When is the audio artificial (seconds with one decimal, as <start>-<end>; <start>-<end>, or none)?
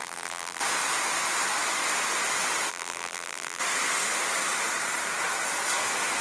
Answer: 0.0-0.6; 2.7-3.6